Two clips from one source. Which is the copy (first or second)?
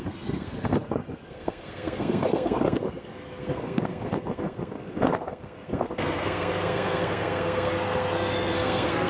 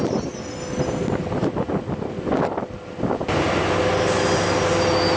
first